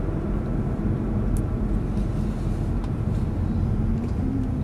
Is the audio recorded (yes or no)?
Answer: yes